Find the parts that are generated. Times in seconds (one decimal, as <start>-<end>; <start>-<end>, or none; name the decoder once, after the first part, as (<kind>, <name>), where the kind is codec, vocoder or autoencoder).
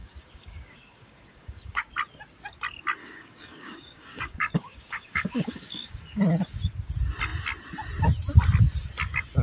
0.0-1.9 (codec, DAC); 3.0-6.2